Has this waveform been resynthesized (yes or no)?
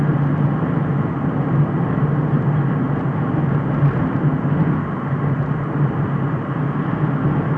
no